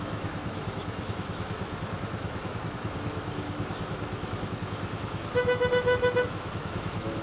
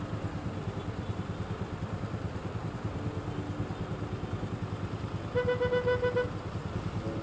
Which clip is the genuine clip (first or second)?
second